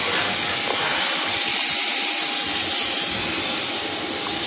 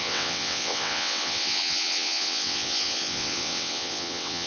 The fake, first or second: second